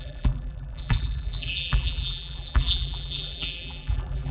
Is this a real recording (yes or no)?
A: no